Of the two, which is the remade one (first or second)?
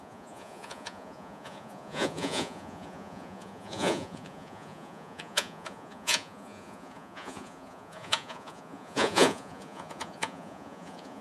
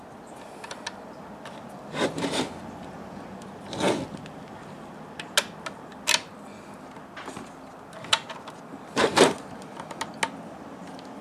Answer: first